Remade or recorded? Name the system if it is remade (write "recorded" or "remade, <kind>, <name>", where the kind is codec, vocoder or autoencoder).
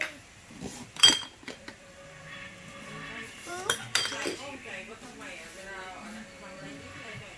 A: remade, vocoder, BigVGAN v2